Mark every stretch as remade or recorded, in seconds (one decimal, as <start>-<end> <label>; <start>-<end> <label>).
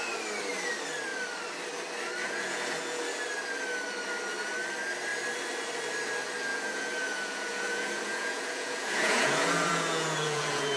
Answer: 0.0-2.2 recorded; 2.2-3.0 remade; 3.0-6.5 recorded; 6.5-10.8 remade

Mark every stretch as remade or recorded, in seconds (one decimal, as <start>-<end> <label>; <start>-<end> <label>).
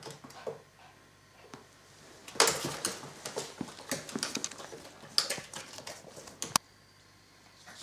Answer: 0.0-7.8 recorded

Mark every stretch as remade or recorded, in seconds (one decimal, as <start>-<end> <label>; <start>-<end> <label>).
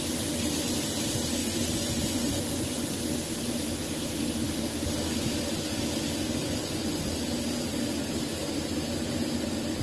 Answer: 0.0-1.4 recorded; 1.4-3.0 remade; 3.0-6.4 recorded; 6.4-7.0 remade; 7.0-9.8 recorded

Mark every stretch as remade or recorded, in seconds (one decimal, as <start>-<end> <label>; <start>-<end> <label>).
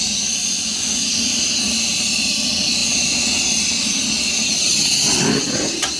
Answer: 0.0-0.4 recorded; 0.4-1.2 remade; 1.2-6.0 recorded